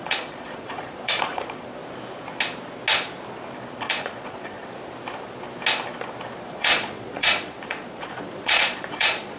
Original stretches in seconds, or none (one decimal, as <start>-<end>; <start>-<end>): 1.8-3.8; 4.6-6.5